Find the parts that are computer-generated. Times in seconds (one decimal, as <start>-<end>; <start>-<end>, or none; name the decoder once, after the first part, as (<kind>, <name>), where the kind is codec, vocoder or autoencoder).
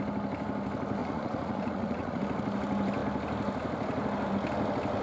1.0-2.2 (vocoder, Vocos)